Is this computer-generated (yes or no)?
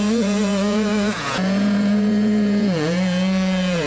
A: yes